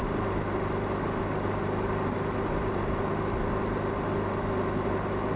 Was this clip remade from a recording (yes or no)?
no